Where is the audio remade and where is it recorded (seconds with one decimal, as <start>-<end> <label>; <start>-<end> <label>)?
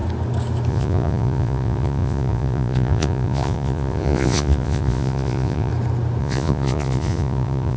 0.0-0.7 recorded; 0.7-5.7 remade; 5.7-6.2 recorded; 6.2-7.8 remade